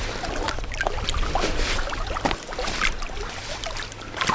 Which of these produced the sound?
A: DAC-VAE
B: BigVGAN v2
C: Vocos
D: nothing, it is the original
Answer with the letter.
D